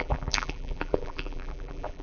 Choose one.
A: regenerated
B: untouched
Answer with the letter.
A